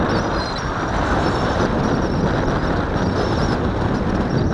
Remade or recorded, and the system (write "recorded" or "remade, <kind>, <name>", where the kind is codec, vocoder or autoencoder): recorded